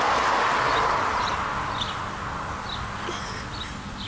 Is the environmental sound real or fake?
real